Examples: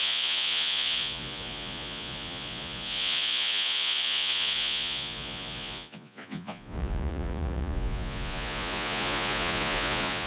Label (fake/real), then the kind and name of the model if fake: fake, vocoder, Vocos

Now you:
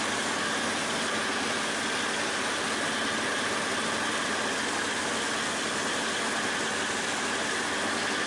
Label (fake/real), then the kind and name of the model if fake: real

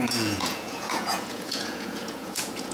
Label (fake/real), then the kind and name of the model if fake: fake, vocoder, Vocos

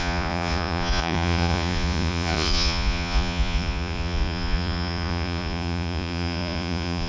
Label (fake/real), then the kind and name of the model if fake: fake, vocoder, Vocos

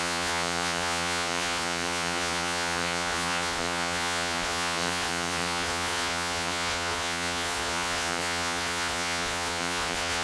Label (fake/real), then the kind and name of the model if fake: fake, vocoder, Vocos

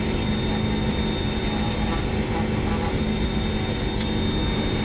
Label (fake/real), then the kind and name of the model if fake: real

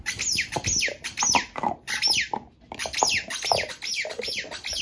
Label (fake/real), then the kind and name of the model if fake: real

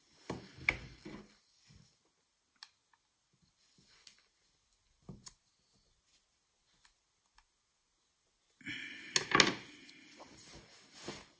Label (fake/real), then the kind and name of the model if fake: real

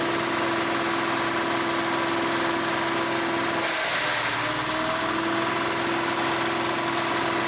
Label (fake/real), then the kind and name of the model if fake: real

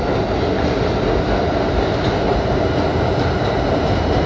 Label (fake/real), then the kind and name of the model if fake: real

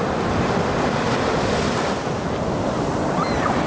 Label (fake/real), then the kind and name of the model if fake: real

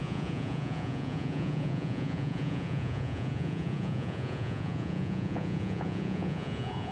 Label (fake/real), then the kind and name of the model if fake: fake, vocoder, Vocos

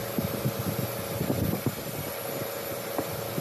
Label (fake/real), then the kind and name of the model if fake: real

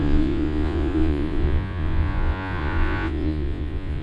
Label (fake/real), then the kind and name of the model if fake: fake, vocoder, Vocos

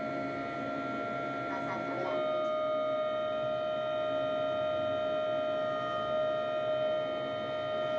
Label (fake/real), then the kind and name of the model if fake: real